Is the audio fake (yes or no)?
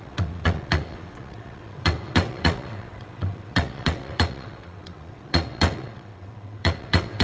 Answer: yes